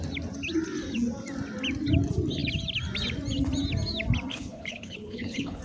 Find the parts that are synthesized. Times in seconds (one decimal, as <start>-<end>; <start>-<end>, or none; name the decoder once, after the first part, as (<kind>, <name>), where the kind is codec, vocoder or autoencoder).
4.3-5.6 (codec, HILCodec)